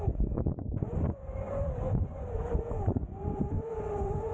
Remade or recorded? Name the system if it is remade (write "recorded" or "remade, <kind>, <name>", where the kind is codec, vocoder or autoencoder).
remade, vocoder, Vocos